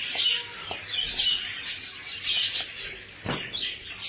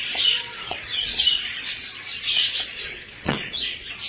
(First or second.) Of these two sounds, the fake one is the second